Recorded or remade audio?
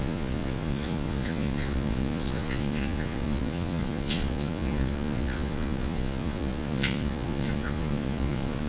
remade